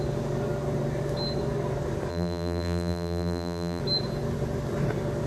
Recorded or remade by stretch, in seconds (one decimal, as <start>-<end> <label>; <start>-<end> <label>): 0.0-2.1 recorded; 2.1-3.8 remade; 3.8-5.3 recorded